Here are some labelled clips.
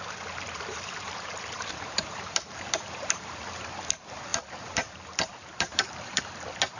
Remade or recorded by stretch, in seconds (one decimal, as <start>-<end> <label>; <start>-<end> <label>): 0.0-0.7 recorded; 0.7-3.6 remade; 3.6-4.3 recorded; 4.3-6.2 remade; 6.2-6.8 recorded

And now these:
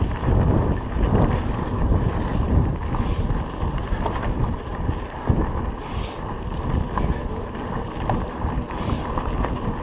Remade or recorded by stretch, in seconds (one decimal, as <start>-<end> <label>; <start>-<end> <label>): 0.0-2.3 recorded; 2.3-4.9 remade; 4.9-9.8 recorded

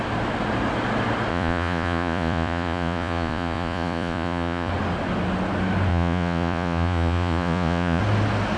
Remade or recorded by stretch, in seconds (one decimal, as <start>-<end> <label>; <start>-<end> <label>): 0.0-1.3 recorded; 1.3-4.7 remade; 4.7-5.9 recorded; 5.9-8.0 remade; 8.0-8.6 recorded

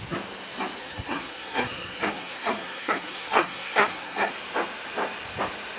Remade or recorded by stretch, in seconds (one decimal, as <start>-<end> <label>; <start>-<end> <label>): 0.0-0.8 recorded; 0.8-4.3 remade; 4.3-5.8 recorded

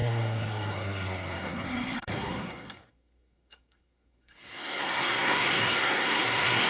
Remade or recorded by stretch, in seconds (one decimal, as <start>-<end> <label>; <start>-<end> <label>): 0.0-6.7 remade

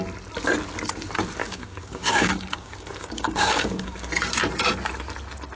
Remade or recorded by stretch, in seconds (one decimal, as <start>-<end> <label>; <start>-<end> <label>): 0.0-1.4 recorded; 1.4-4.1 remade; 4.1-5.6 recorded